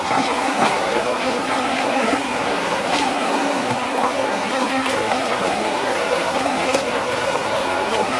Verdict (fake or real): fake